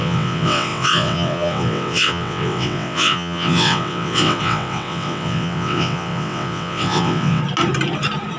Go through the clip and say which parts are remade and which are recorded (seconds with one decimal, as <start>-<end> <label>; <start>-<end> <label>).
0.0-7.4 remade; 7.4-8.4 recorded